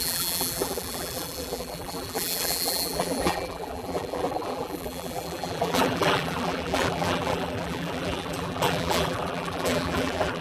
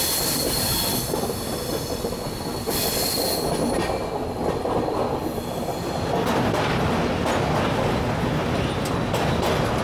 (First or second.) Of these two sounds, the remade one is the first